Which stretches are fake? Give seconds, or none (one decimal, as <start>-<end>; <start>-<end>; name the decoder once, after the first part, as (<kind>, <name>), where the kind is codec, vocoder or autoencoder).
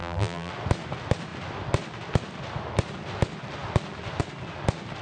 0.0-0.5 (vocoder, BigVGAN v2)